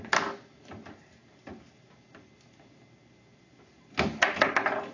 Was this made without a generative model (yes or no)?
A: yes